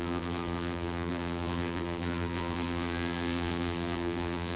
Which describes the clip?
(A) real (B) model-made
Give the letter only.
B